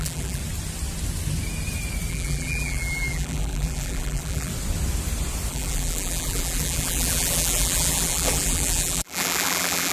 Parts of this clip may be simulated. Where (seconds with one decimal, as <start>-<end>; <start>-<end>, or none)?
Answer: 0.0-0.4; 2.1-4.5; 5.5-9.9